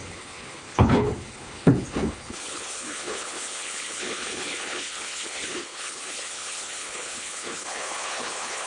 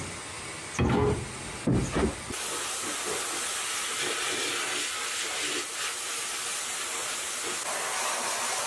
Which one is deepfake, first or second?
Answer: first